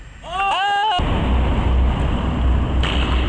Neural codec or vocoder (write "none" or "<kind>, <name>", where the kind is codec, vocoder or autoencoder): none